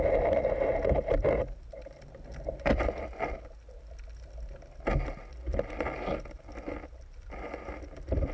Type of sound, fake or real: real